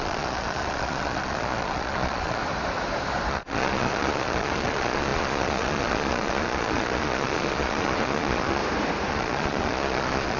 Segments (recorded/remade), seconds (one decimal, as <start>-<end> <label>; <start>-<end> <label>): 0.0-2.4 remade; 2.4-3.3 recorded; 3.3-8.6 remade; 8.6-9.1 recorded; 9.1-10.4 remade